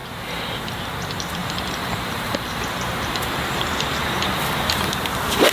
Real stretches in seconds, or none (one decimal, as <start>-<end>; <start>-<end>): 0.0-1.4; 3.7-5.5

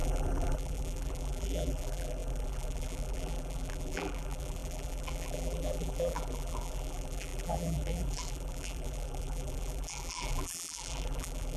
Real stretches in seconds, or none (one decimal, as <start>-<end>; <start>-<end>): none

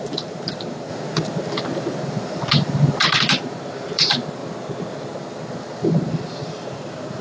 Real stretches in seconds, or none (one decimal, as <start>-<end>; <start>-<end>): 0.9-3.0; 4.4-5.9

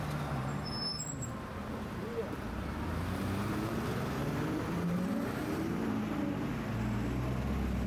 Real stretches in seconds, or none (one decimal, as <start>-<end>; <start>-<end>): 0.0-0.9; 3.8-4.2; 6.0-7.9

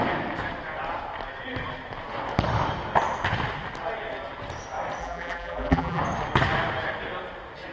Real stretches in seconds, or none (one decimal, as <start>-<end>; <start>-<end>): 0.0-5.0; 6.0-7.7

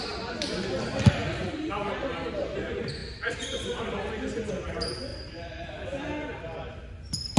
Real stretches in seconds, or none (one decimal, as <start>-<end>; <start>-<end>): 0.0-1.2; 1.7-3.0; 3.8-5.1; 6.8-7.4

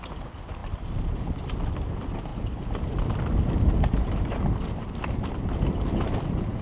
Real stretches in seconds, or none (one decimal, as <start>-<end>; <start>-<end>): 0.0-6.6

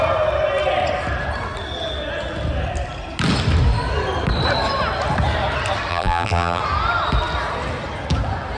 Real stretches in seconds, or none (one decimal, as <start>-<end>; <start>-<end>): 0.0-5.9; 6.6-8.6